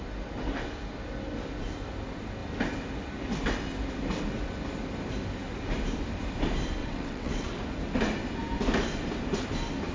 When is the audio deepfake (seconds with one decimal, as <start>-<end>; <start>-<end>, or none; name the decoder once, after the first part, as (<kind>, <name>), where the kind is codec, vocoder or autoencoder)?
6.8-7.5 (vocoder, WaveNeXt)